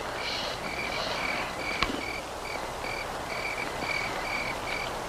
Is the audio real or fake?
real